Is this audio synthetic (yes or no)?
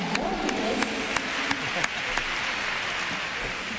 no